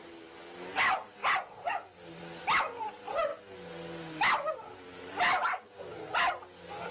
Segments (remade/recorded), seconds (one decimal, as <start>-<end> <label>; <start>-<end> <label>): 0.0-6.9 recorded